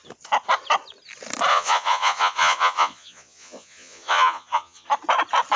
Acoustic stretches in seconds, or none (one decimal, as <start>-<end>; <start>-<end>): 0.0-1.5; 4.9-5.6